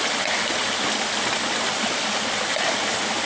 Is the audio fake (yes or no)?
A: no